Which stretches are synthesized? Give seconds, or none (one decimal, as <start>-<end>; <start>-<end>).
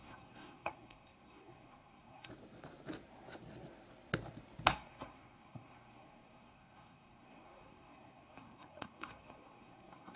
0.0-2.3; 4.7-10.2